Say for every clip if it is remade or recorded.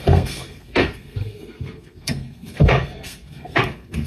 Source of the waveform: remade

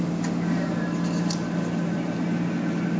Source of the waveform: recorded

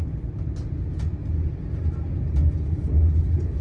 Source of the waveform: recorded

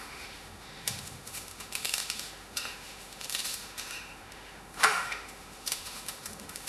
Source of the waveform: remade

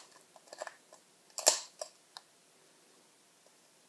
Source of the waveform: recorded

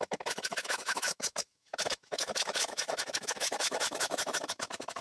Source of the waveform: remade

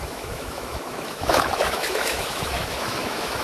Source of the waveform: remade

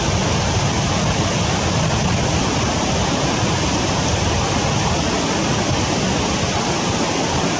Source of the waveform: recorded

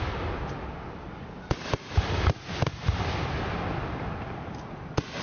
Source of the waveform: recorded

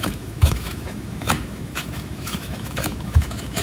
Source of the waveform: remade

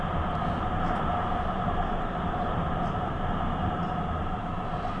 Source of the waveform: recorded